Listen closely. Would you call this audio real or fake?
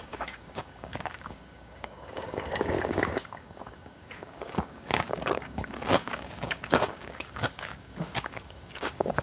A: fake